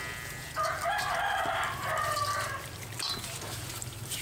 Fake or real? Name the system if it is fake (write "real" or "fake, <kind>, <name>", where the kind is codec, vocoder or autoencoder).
real